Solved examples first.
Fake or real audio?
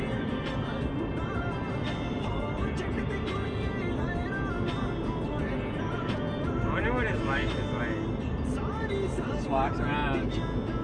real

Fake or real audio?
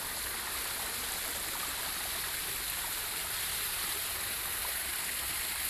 real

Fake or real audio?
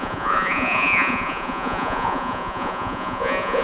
fake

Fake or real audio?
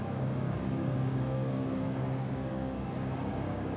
fake